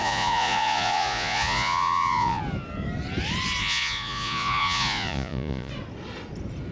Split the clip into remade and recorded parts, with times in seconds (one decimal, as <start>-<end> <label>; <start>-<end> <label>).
0.0-2.4 remade; 2.4-3.6 recorded; 3.6-5.7 remade; 5.7-6.7 recorded